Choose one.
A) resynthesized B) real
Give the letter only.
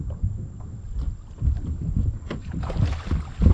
B